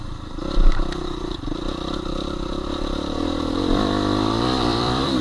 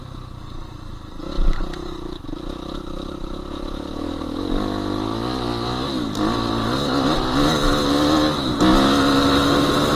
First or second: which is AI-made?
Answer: first